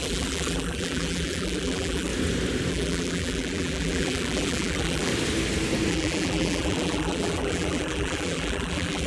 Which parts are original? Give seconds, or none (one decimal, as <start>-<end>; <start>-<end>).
2.1-2.7; 5.1-5.9